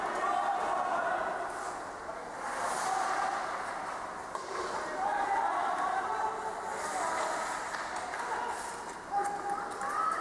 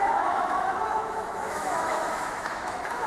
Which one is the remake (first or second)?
second